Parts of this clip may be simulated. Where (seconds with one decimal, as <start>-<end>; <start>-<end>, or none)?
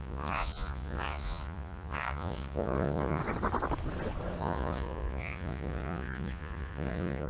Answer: 0.0-3.2; 4.4-7.3